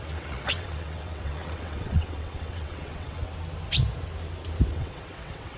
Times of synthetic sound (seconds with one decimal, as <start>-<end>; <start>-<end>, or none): 0.0-3.2; 4.7-5.6